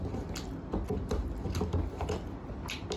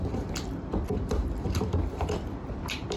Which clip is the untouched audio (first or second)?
first